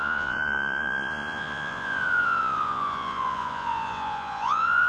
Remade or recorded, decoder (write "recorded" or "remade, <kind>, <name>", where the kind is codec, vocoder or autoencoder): remade, vocoder, Vocos